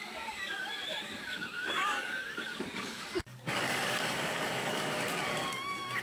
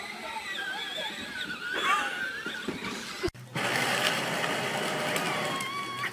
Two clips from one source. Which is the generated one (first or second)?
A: first